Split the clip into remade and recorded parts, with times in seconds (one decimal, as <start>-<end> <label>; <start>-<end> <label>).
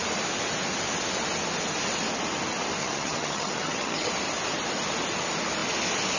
0.0-2.8 recorded; 2.8-4.1 remade; 4.1-6.2 recorded